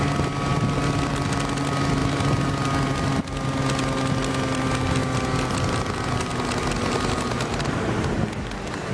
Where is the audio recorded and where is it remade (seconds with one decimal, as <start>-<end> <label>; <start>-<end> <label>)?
0.0-8.9 recorded